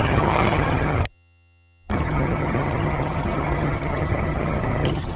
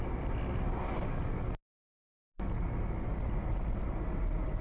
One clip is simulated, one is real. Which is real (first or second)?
second